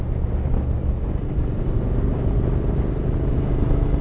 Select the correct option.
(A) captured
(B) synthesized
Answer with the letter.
A